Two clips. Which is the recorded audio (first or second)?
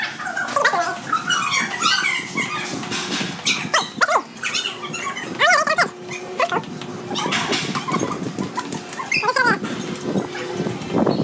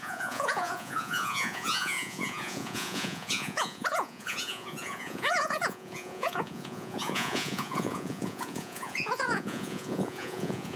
first